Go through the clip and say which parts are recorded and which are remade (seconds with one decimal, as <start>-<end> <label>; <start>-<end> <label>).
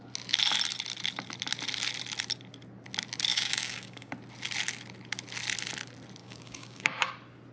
0.0-3.3 recorded; 3.3-4.1 remade; 4.1-6.2 recorded; 6.2-7.1 remade; 7.1-7.5 recorded